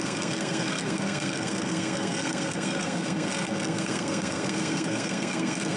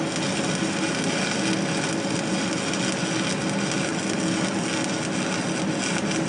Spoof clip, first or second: first